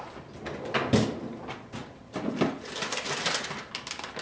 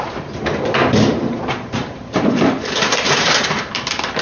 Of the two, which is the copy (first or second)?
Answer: second